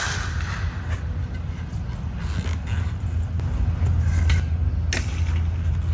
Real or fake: real